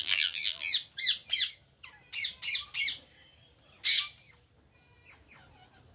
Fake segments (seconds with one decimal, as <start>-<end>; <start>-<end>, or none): 0.0-0.7